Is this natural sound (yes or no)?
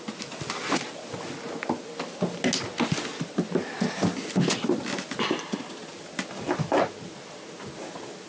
yes